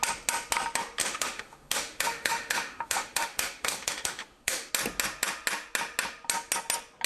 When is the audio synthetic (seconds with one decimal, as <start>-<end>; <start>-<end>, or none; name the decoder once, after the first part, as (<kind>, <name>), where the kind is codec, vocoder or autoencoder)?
1.0-4.7 (autoencoder, DAC-VAE)